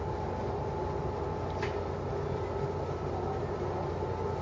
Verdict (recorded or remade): recorded